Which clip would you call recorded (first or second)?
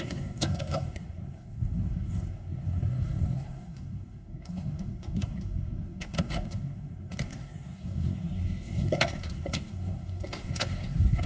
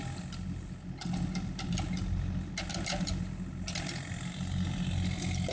second